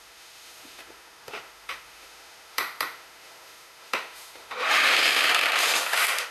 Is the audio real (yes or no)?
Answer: no